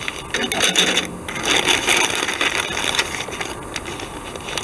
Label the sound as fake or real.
real